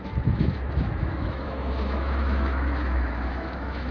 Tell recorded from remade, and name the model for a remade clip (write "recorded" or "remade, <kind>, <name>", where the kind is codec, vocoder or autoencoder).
remade, autoencoder, DAC-VAE